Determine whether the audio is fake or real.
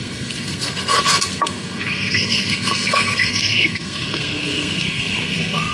fake